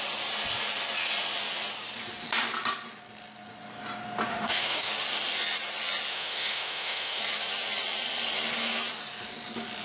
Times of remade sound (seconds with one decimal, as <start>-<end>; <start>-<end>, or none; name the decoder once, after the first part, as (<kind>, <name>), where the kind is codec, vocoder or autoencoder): 4.3-4.9 (autoencoder, DAC-VAE); 6.1-7.2